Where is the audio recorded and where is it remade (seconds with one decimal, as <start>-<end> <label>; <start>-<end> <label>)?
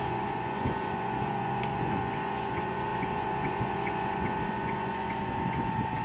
0.0-6.0 remade